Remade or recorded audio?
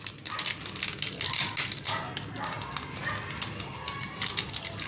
recorded